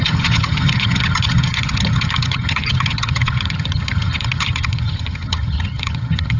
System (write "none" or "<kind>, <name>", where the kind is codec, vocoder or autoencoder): vocoder, HiFi-GAN